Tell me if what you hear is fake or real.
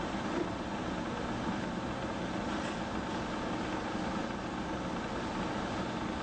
real